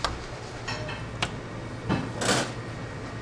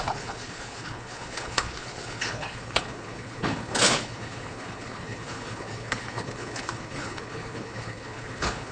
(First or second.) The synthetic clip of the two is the second